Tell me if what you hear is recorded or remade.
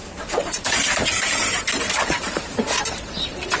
remade